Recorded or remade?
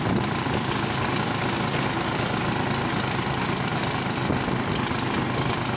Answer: recorded